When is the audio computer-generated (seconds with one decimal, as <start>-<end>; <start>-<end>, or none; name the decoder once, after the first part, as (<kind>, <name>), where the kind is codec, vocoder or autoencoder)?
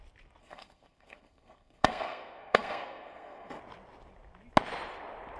0.4-3.6 (codec, SNAC)